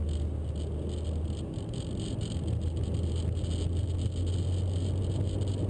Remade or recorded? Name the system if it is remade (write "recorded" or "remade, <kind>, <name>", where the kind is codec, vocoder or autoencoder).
recorded